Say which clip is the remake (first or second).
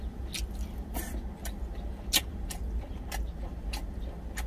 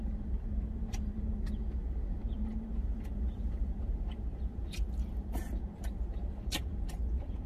second